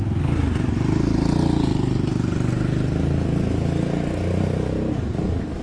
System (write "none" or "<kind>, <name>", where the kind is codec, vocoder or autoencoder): none